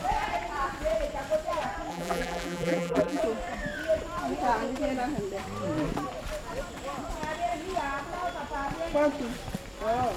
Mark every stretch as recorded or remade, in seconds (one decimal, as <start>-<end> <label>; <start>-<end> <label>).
0.0-1.9 recorded; 1.9-3.2 remade; 3.2-10.2 recorded